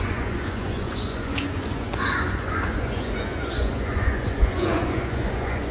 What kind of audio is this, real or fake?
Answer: fake